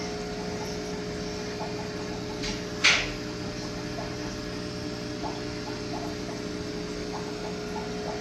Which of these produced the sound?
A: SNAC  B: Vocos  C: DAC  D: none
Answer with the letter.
D